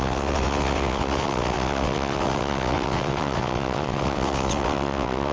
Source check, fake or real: fake